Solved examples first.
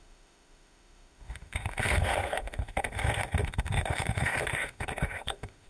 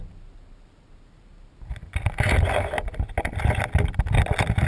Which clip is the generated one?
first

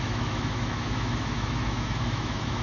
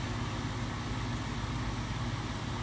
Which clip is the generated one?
first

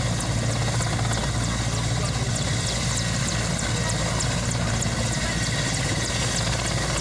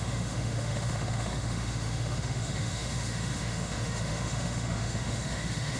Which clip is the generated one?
second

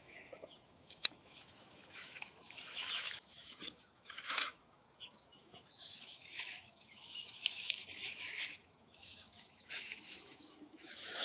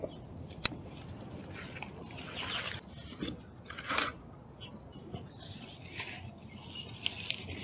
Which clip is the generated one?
first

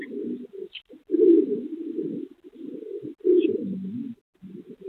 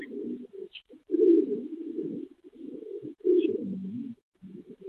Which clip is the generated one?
second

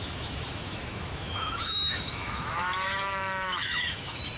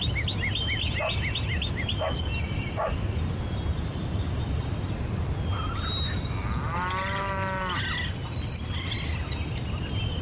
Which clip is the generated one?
first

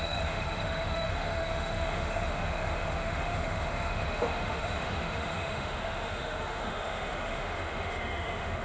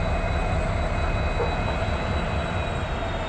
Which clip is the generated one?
first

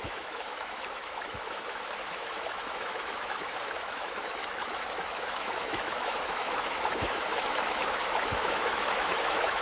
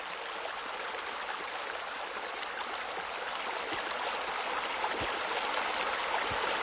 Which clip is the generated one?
first